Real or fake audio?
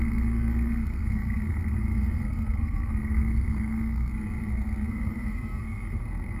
fake